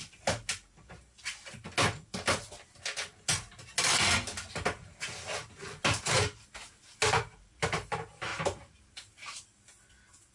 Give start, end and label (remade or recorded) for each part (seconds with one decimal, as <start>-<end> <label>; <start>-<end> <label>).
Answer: 0.0-8.3 recorded; 8.3-9.9 remade; 9.9-10.3 recorded